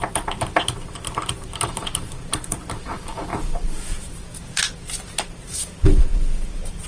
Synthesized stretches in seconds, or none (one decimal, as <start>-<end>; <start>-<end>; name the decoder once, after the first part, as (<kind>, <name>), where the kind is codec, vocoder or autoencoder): 0.0-6.9 (vocoder, BigVGAN v2)